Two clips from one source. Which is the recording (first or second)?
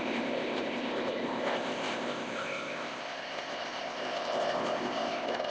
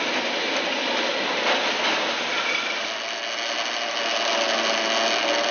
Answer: second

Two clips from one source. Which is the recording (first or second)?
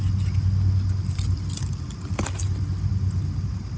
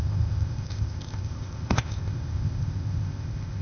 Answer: first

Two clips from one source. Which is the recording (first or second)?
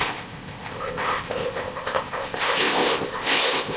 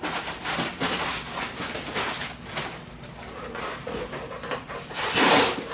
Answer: second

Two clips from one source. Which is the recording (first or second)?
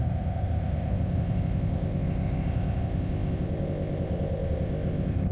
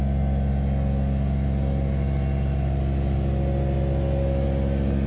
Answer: second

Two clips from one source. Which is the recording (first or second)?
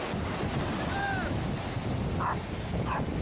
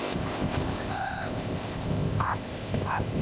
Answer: first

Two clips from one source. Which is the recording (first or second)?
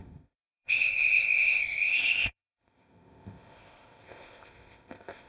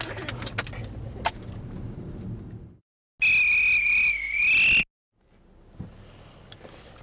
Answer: second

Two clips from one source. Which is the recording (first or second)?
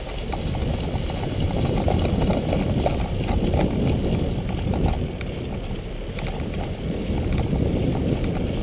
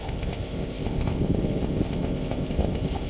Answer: first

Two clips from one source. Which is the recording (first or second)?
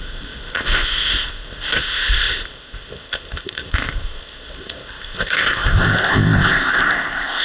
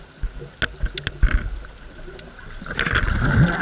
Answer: second